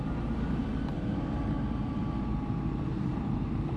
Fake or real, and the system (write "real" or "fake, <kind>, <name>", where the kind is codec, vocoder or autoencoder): fake, vocoder, BigVGAN v2